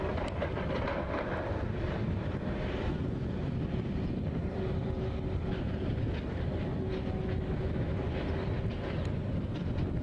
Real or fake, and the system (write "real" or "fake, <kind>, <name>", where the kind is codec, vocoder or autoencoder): real